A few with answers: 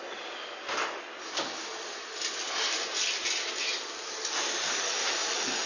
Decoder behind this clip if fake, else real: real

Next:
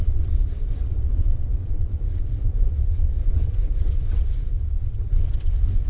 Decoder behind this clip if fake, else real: fake, vocoder, WaveNeXt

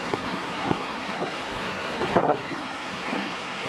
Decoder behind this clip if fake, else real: fake, codec, SNAC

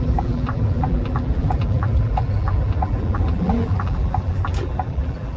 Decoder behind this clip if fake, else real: fake, vocoder, BigVGAN v2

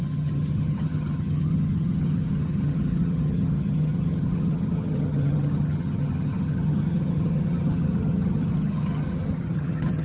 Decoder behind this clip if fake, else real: fake, vocoder, HiFi-GAN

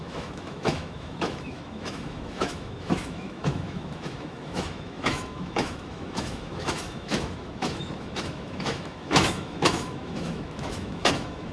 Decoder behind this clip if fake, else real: fake, autoencoder, DAC-VAE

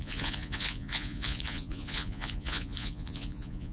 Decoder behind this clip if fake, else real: fake, vocoder, Vocos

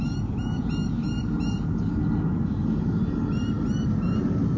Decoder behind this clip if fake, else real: real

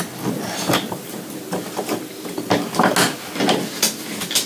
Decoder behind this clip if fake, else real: real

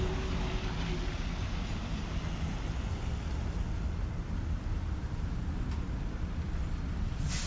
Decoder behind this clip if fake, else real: real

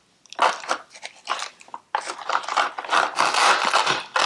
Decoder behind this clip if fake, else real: real